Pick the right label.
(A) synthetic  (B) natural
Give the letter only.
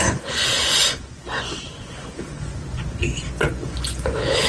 A